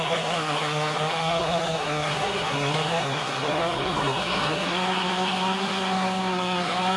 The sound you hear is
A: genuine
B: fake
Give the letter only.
B